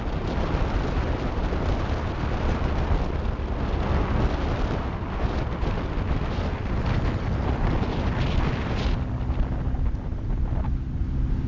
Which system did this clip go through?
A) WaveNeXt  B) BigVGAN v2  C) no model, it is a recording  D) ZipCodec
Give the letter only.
C